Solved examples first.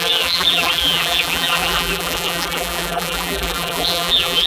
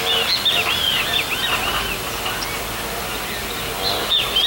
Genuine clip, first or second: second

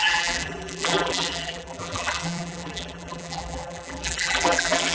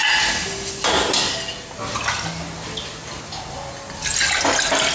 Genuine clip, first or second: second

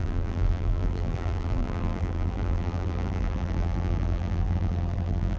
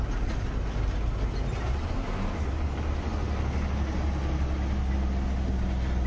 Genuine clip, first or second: second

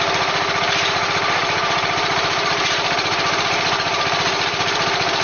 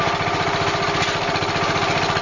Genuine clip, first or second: second